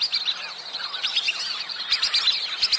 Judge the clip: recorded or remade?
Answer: recorded